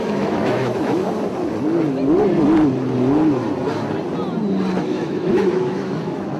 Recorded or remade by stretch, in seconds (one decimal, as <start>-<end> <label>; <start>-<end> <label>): 0.0-1.0 remade; 1.0-4.8 recorded; 4.8-6.4 remade